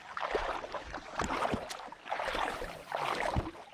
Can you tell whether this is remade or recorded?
recorded